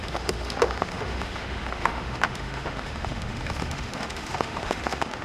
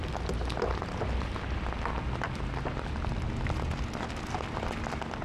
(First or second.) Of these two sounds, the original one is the second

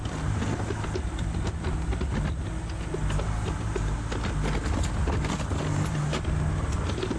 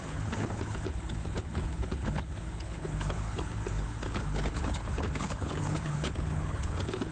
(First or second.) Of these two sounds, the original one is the first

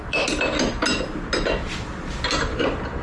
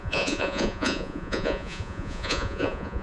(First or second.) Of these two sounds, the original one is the first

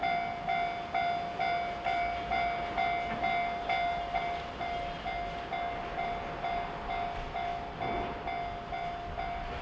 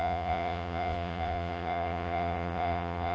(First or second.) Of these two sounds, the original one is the first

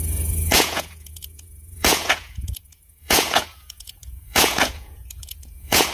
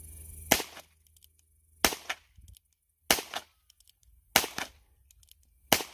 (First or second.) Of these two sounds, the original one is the second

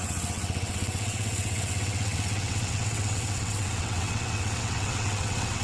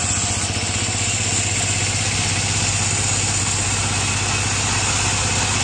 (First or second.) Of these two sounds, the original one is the second